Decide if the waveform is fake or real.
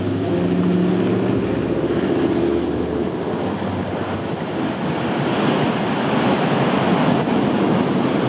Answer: real